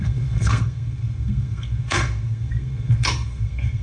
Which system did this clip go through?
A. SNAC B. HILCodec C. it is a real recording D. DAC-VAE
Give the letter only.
A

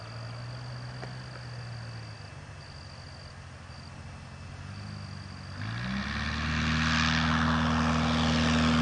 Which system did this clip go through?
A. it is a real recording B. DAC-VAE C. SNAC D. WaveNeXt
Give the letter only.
A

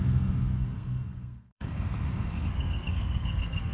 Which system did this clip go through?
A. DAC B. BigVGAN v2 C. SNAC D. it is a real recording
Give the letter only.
C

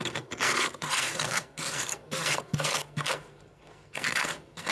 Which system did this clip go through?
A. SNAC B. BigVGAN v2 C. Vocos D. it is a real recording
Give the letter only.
A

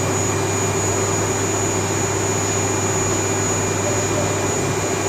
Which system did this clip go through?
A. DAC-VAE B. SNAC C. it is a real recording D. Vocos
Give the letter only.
C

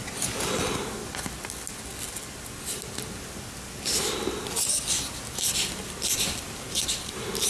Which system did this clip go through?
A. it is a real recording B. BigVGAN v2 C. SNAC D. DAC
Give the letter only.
A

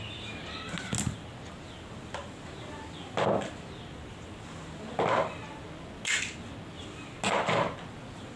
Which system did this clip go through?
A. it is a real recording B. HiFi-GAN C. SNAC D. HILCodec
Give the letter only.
A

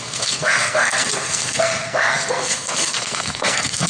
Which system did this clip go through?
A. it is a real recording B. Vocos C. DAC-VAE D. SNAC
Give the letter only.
D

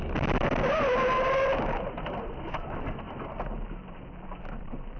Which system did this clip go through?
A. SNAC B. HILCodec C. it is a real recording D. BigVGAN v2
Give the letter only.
C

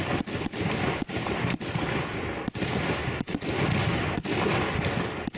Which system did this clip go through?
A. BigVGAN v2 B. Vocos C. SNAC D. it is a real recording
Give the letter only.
D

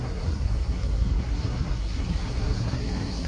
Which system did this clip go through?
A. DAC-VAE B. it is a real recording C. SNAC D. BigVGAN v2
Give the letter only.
C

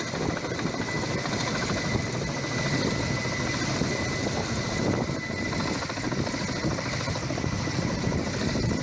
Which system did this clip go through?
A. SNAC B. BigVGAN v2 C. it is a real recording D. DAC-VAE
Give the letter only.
C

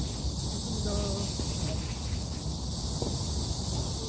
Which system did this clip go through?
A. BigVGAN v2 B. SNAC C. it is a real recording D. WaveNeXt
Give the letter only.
C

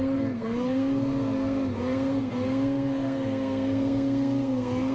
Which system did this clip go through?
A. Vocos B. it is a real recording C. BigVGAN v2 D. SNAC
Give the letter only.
D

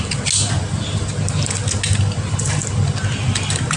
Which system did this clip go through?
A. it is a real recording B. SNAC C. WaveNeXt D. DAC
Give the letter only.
A